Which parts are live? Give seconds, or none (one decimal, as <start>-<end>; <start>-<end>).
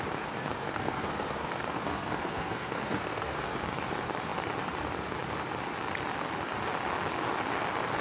0.0-0.6; 3.6-8.0